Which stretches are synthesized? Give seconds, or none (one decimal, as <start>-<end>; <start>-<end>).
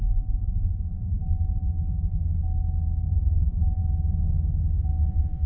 0.0-2.2; 3.1-3.8; 5.0-5.5